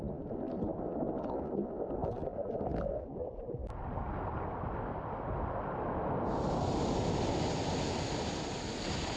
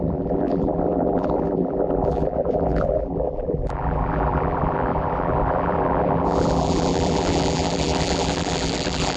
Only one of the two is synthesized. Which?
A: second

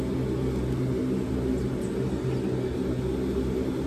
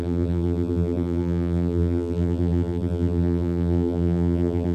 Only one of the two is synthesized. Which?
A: second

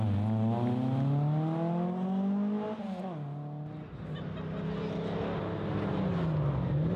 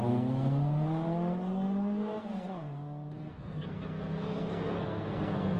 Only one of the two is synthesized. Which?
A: second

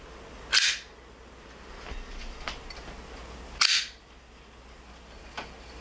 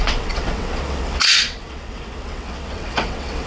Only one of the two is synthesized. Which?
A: second